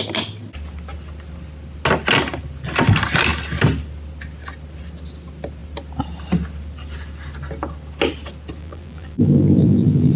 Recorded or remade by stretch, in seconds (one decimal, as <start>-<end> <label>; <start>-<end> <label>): 0.0-8.6 recorded; 8.6-10.2 remade